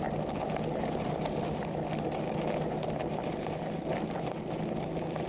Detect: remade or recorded recorded